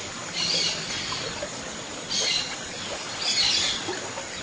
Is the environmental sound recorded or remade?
recorded